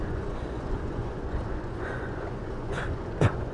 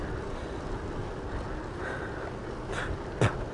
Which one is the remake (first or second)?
first